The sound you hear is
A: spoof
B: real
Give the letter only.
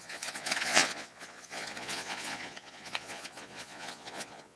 A